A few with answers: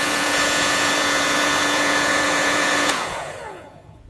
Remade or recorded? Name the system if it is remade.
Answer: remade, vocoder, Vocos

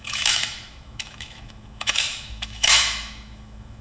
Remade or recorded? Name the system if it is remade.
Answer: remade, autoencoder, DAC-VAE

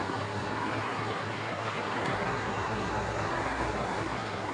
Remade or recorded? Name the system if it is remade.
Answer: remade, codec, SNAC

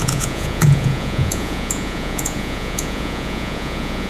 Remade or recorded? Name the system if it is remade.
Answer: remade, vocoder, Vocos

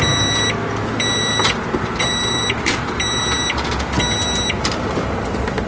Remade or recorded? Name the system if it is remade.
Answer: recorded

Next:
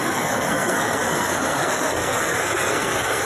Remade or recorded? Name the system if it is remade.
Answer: remade, codec, SNAC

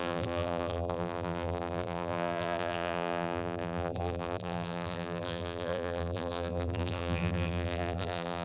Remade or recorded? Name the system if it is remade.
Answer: remade, vocoder, BigVGAN v2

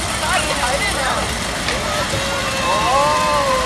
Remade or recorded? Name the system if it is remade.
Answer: recorded